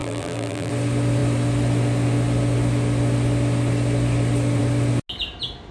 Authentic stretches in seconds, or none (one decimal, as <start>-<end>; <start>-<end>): 0.7-5.7